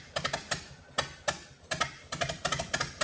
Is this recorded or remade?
recorded